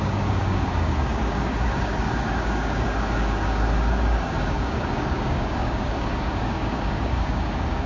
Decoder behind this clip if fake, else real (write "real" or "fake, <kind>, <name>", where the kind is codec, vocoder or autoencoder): fake, codec, DAC